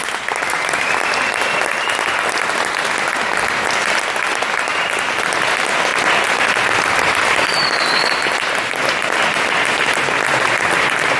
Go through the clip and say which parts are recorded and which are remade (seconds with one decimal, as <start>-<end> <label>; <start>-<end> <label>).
0.0-11.2 recorded